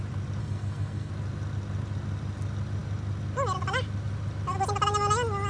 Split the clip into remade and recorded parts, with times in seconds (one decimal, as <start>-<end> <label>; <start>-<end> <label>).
0.0-0.4 recorded; 0.4-1.1 remade; 1.1-5.5 recorded